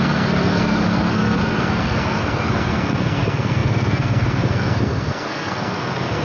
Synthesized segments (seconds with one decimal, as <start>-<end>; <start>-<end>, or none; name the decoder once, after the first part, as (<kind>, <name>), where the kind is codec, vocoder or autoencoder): 0.0-6.2 (codec, SNAC)

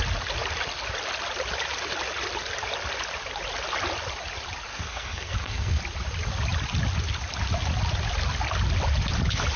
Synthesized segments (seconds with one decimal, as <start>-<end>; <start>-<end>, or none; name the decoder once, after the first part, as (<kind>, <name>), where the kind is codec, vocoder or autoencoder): 4.7-5.8 (codec, SNAC)

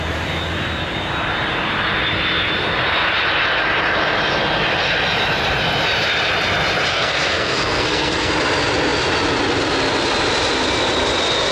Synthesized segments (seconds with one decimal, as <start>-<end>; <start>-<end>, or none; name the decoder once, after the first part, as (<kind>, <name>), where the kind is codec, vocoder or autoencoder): 6.9-8.3 (codec, SNAC)

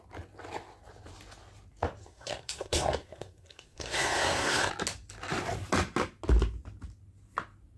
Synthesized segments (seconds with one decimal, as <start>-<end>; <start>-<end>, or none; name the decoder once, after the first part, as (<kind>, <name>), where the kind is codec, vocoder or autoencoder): 2.0-4.7 (codec, SNAC)

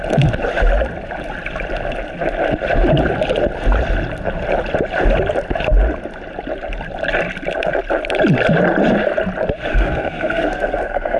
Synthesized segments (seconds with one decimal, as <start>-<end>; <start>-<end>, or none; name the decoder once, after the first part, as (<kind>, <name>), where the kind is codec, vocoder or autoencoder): 9.7-11.2 (codec, SNAC)

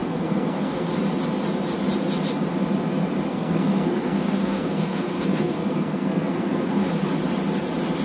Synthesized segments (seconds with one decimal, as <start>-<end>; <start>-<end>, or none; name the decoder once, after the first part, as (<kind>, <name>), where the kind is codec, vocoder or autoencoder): 0.0-0.9 (codec, SNAC); 3.3-6.9

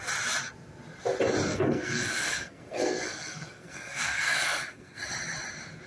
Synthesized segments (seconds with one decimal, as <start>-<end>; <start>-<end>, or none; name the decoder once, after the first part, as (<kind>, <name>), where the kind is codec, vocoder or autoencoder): 1.5-5.0 (codec, SNAC)

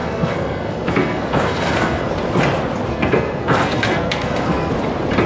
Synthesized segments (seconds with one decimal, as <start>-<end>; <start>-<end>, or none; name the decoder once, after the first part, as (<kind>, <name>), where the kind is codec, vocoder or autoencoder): 0.0-2.1 (codec, SNAC); 2.9-4.7